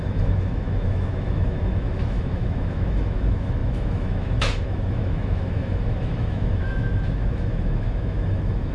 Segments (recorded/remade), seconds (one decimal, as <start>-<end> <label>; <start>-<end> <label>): 0.0-8.7 remade